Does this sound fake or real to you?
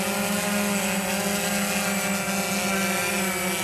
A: real